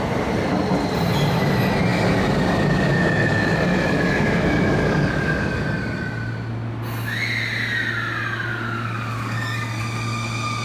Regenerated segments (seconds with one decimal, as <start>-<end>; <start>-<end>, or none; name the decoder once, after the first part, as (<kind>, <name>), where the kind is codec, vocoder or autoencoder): 1.9-5.6 (codec, DAC); 8.5-9.8